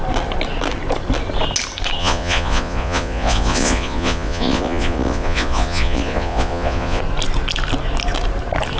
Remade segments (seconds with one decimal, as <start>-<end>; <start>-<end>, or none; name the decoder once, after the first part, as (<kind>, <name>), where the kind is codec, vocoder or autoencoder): 2.0-7.0 (vocoder, Vocos)